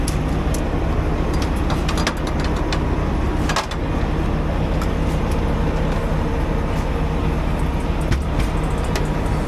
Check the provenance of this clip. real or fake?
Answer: real